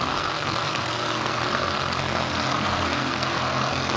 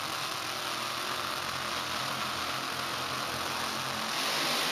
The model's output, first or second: first